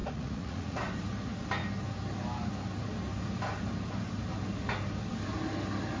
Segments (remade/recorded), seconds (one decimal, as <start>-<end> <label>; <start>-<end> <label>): 0.0-0.8 remade; 0.8-6.0 recorded